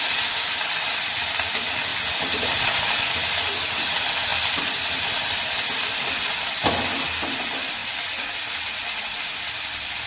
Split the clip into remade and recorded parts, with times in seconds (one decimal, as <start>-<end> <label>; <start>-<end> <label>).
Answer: 0.0-10.1 recorded